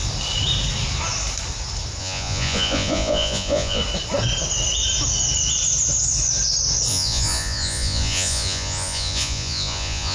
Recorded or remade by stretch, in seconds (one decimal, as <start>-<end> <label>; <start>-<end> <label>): 0.0-2.0 recorded; 2.0-3.8 remade; 3.8-6.9 recorded; 6.9-10.1 remade